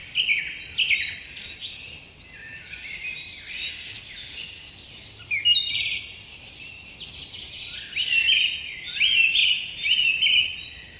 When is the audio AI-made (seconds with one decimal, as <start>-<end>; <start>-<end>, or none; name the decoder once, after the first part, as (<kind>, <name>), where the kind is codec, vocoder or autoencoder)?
none